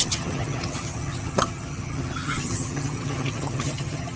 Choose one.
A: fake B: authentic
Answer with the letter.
A